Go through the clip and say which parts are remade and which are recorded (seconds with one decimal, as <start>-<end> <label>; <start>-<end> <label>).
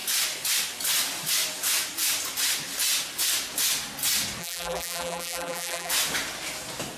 0.0-4.4 recorded; 4.4-5.9 remade; 5.9-7.0 recorded